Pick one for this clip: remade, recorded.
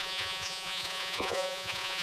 remade